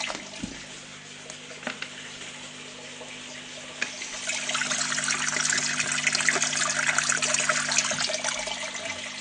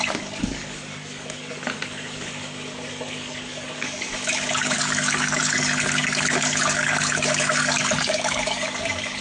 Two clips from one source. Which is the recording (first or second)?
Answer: first